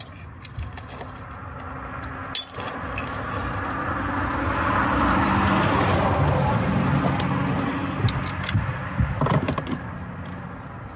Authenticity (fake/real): real